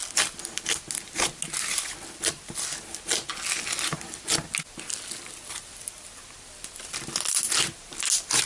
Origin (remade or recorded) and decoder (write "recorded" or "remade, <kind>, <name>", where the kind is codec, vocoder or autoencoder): recorded